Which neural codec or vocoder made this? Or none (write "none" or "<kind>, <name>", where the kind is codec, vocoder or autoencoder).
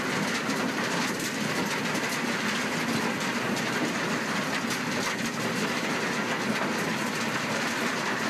none